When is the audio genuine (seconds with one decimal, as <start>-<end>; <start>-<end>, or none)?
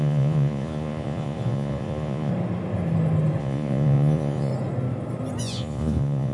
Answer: 2.3-3.4; 4.5-5.4